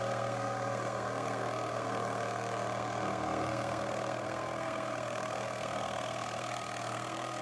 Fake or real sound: fake